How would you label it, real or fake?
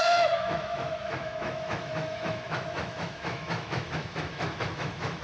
fake